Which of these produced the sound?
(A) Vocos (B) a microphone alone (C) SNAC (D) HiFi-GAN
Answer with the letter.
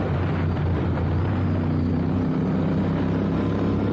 B